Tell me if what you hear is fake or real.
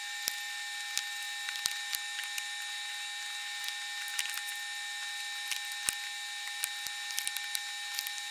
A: real